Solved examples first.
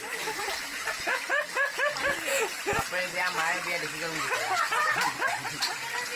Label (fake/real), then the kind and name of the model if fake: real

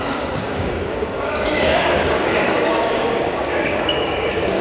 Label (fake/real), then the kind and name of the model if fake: fake, codec, DAC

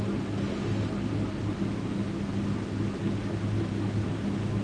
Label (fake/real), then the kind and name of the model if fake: real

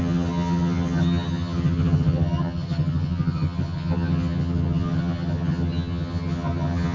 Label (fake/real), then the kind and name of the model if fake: fake, vocoder, HiFi-GAN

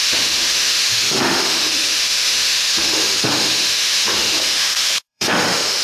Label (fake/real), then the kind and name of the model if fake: fake, autoencoder, DAC-VAE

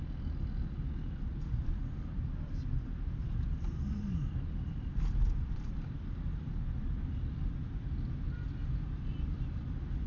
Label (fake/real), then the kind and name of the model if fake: real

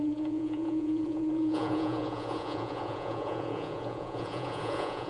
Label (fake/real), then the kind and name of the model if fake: fake, vocoder, Vocos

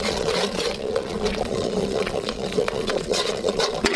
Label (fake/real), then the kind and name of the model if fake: fake, vocoder, Vocos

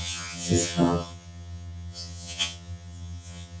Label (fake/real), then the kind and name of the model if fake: fake, vocoder, HiFi-GAN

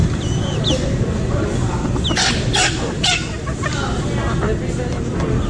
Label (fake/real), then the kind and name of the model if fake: real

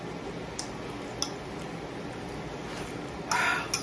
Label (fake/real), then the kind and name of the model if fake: real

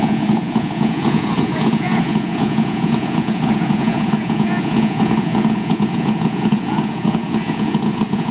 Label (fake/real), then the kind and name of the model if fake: fake, vocoder, Vocos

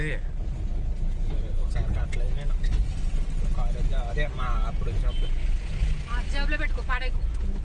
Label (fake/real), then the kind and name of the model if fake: real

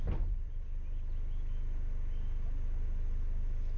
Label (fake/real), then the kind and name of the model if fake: real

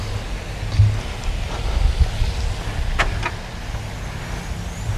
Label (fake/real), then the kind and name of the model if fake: real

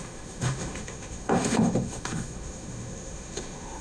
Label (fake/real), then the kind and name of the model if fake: fake, autoencoder, DAC-VAE